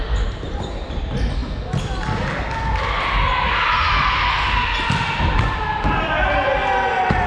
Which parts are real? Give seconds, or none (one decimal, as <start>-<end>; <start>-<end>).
1.4-5.2; 6.6-7.3